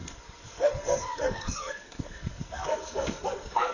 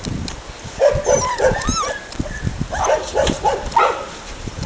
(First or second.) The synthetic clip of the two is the first